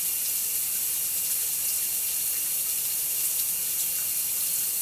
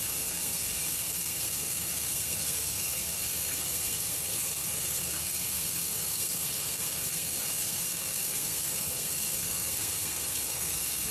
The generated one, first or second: second